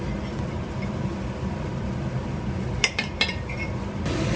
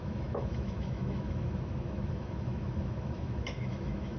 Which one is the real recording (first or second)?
first